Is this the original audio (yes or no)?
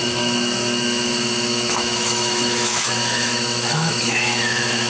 no